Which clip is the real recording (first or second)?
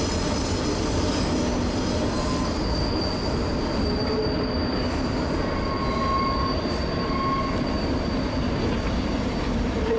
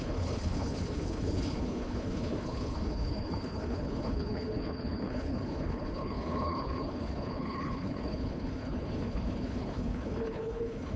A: first